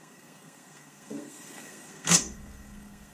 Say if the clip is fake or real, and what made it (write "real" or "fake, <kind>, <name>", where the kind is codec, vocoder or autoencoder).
fake, codec, SNAC